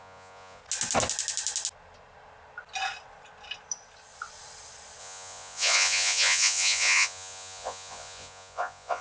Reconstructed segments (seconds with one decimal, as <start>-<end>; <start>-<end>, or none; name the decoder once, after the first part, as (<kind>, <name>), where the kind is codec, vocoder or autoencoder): 0.0-0.6 (vocoder, Vocos); 5.0-9.0